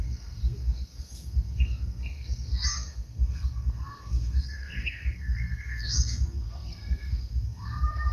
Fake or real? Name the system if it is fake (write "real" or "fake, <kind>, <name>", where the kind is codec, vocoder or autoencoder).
fake, codec, SNAC